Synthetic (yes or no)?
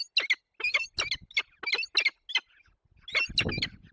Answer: no